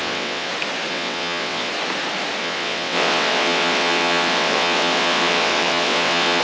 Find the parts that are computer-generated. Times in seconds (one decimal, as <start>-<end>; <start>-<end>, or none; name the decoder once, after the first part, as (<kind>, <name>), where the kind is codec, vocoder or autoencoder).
0.0-0.5 (vocoder, WaveNeXt); 0.9-1.7; 2.4-6.4